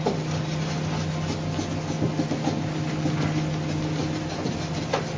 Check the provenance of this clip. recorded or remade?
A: recorded